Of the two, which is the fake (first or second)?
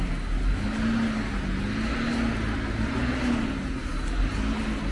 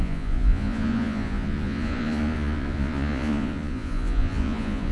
second